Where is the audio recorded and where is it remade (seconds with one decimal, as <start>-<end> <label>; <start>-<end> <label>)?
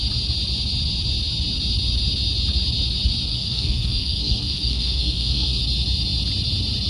0.0-3.3 recorded; 3.3-5.6 remade; 5.6-6.9 recorded